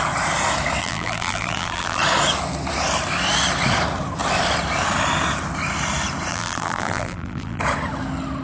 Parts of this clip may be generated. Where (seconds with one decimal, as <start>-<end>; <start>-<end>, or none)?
0.8-2.0; 6.3-7.6